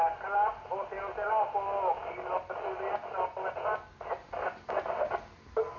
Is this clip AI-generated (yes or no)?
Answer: no